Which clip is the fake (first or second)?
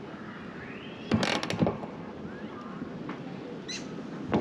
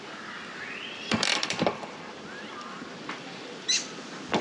second